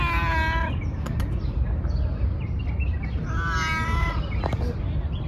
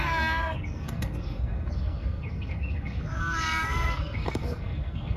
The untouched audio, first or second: first